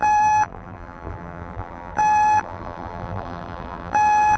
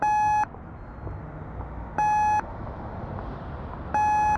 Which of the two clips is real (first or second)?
second